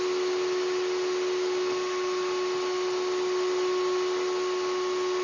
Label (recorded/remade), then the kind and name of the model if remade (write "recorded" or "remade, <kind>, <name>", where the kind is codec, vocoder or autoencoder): recorded